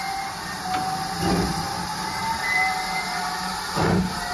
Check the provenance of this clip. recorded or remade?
recorded